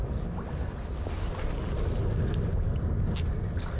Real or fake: real